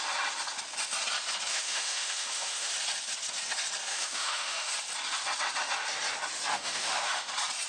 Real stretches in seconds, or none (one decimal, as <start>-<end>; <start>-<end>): 0.0-1.5; 2.7-3.9; 4.7-6.5; 7.3-7.7